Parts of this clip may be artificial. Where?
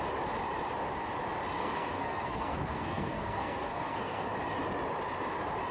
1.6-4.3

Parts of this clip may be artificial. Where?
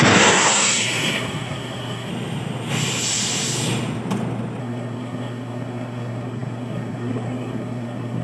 0.0-2.1; 4.6-8.2